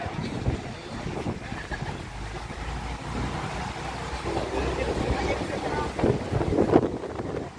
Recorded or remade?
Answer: recorded